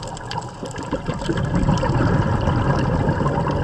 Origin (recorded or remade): recorded